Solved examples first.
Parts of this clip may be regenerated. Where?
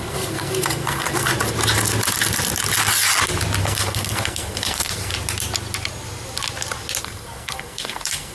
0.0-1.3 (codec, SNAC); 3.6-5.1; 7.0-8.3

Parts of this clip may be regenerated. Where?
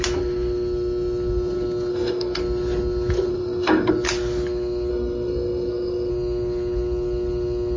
1.9-2.4 (codec, SNAC); 3.3-3.9; 4.9-6.1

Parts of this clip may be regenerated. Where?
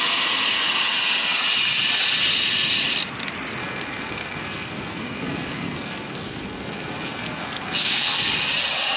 3.6-8.3 (codec, SNAC)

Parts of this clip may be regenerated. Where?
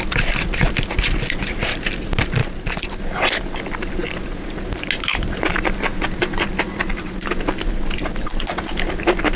none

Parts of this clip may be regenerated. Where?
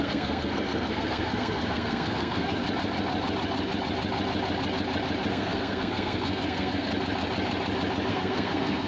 0.0-2.6 (codec, SNAC); 5.3-6.9; 8.1-8.9